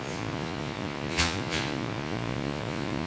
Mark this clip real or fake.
fake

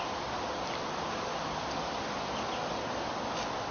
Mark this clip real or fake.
real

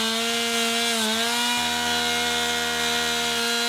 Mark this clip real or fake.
real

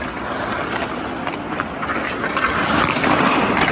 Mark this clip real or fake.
real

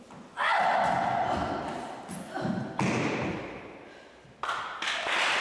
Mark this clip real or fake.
real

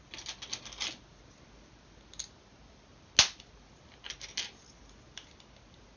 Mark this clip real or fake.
real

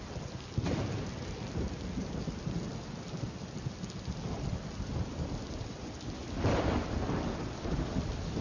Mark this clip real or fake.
real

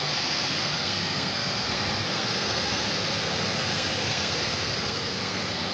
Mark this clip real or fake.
fake